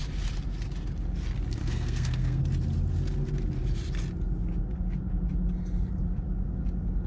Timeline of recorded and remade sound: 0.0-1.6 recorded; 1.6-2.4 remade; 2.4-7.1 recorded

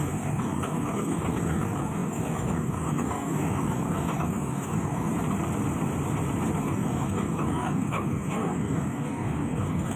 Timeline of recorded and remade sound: 0.0-5.1 remade; 5.1-6.6 recorded; 6.6-10.0 remade

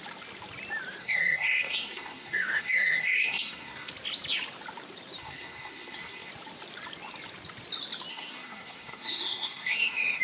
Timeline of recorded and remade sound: 0.0-1.0 recorded; 1.0-3.9 remade; 3.9-5.2 recorded; 5.2-6.3 remade; 6.3-8.1 recorded; 8.1-10.2 remade

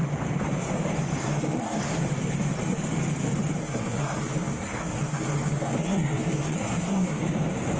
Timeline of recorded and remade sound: 0.0-1.2 recorded; 1.2-1.8 remade; 1.8-3.6 recorded; 3.6-7.2 remade; 7.2-7.8 recorded